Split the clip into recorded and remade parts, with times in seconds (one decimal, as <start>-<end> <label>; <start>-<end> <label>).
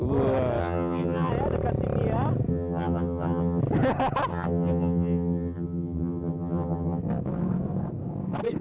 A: 0.0-0.6 recorded; 0.6-1.3 remade; 1.3-2.5 recorded; 2.5-3.6 remade; 3.6-4.3 recorded; 4.3-7.0 remade; 7.0-8.6 recorded